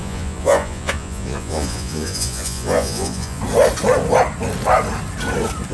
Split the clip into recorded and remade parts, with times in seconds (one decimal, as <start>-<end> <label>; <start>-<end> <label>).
0.0-3.4 remade; 3.4-5.7 recorded